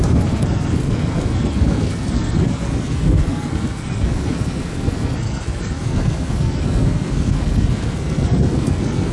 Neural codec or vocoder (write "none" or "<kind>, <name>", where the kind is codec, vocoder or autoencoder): codec, SNAC